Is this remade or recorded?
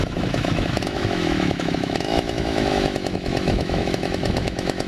remade